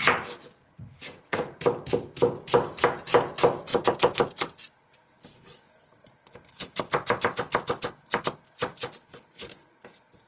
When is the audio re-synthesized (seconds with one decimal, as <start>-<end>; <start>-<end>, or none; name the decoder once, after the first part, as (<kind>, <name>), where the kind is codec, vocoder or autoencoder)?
0.4-1.6 (vocoder, Vocos)